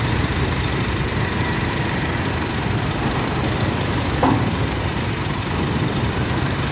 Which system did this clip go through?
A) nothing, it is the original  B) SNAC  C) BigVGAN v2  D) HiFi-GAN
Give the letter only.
C